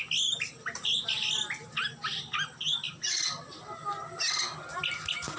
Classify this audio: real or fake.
real